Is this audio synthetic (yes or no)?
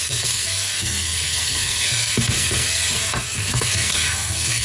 yes